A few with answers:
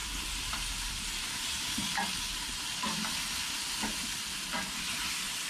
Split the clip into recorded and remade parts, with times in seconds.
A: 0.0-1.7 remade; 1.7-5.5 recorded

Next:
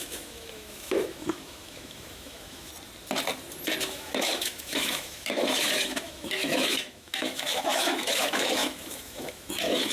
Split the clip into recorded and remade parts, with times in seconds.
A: 0.0-2.7 remade; 2.7-3.8 recorded; 3.8-9.9 remade

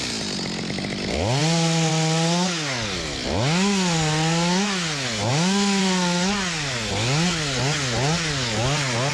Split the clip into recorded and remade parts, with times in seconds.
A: 0.0-9.1 recorded

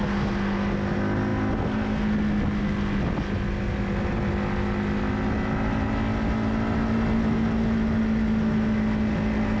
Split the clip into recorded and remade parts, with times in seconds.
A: 0.0-9.6 recorded

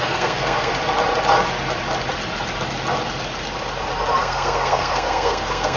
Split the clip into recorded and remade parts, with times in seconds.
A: 0.0-0.7 remade; 0.7-4.2 recorded; 4.2-5.8 remade

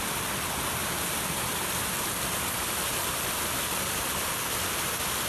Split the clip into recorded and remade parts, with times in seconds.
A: 0.0-5.3 recorded

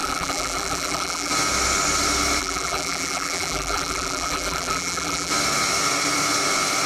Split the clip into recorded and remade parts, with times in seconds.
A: 0.0-1.3 remade; 1.3-2.4 recorded; 2.4-5.3 remade; 5.3-6.9 recorded

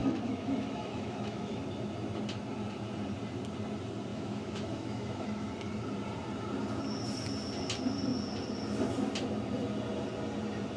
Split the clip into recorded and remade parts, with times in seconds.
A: 0.0-1.6 remade; 1.6-4.1 recorded; 4.1-5.5 remade; 5.5-10.8 recorded